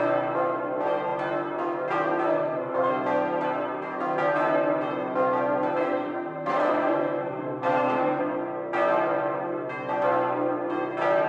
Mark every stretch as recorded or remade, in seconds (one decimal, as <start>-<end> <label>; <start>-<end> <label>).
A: 0.0-2.3 recorded; 2.3-2.9 remade; 2.9-5.8 recorded; 5.8-8.2 remade; 8.2-11.3 recorded